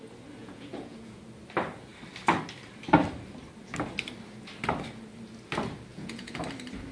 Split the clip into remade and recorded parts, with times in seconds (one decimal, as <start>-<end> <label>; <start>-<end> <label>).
0.0-0.4 recorded; 0.4-1.2 remade; 1.2-5.9 recorded; 5.9-6.4 remade; 6.4-6.9 recorded